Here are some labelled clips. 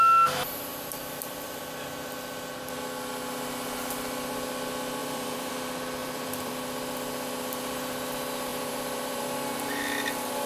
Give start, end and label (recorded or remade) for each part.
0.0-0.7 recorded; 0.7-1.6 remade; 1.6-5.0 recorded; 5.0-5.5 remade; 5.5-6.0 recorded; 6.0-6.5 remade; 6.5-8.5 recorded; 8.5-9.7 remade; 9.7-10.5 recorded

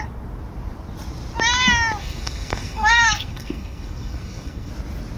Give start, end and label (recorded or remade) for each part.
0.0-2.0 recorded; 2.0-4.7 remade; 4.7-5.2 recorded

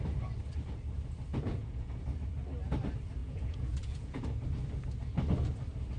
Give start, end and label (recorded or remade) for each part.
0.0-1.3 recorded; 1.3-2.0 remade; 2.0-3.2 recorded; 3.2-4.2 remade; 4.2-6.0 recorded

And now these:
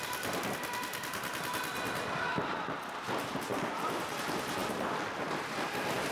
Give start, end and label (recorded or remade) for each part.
0.0-6.1 recorded

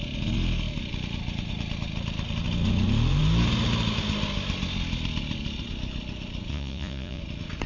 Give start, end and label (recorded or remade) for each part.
0.0-6.5 recorded; 6.5-7.2 remade; 7.2-7.7 recorded

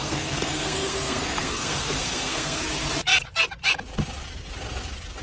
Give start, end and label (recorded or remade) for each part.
0.0-2.6 remade; 2.6-5.2 recorded

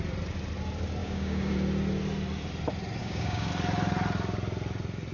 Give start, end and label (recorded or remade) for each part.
0.0-1.0 recorded; 1.0-1.5 remade; 1.5-3.0 recorded; 3.0-3.5 remade; 3.5-5.1 recorded